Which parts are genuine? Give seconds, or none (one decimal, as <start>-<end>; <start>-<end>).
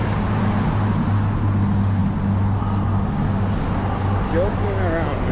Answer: 0.0-5.3